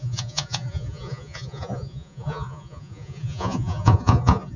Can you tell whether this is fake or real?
fake